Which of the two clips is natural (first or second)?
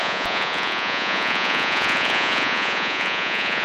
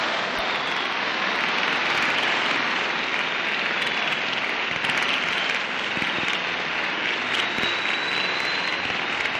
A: second